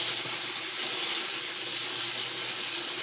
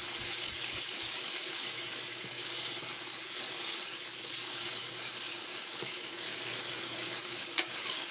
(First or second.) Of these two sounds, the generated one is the second